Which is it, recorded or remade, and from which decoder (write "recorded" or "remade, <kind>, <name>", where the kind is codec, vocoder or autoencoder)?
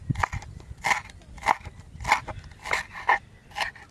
recorded